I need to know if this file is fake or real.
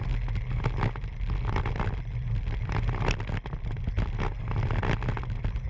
real